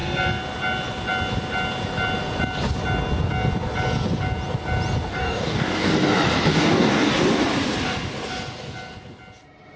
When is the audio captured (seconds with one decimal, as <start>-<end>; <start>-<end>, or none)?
0.0-5.1; 5.9-6.5; 7.1-9.8